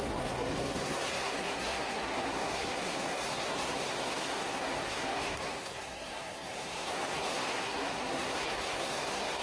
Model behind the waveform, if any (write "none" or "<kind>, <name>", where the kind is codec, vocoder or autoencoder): codec, SNAC